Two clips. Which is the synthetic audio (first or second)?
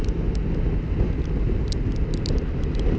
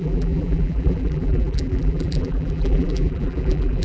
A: second